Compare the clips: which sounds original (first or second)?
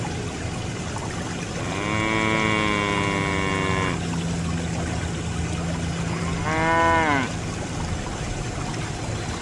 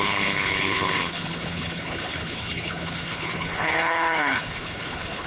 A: first